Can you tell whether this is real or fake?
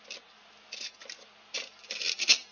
real